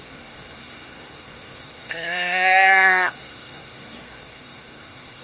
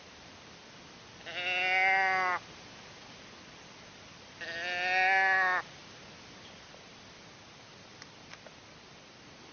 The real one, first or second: second